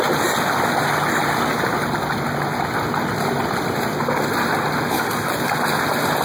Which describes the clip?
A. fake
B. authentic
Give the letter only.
B